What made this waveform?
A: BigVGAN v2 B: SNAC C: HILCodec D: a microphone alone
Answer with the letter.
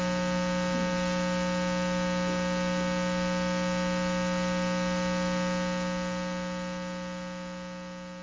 D